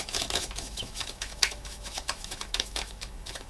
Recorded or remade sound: remade